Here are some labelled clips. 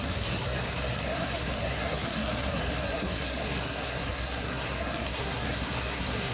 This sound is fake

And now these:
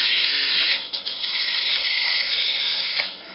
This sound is fake